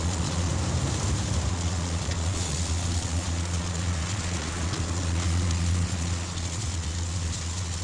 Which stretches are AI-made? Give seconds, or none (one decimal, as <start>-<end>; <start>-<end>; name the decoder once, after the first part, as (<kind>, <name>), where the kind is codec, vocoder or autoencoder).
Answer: 0.0-0.5 (vocoder, Vocos); 1.5-7.8